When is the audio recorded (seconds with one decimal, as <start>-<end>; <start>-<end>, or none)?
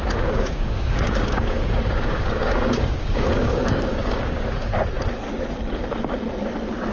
4.7-6.9